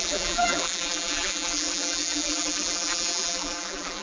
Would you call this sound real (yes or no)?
no